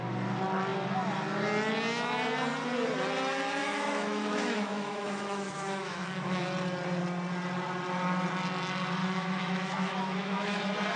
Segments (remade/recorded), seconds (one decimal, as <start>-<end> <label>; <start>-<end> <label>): 0.0-3.6 recorded; 3.6-6.4 remade; 6.4-9.0 recorded; 9.0-10.6 remade; 10.6-11.0 recorded